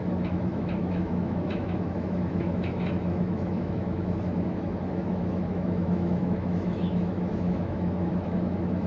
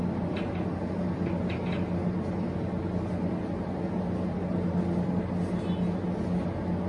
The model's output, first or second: first